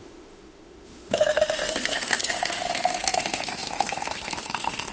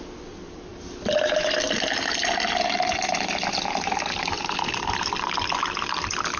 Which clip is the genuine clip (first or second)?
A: second